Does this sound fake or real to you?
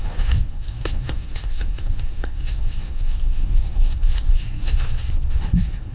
fake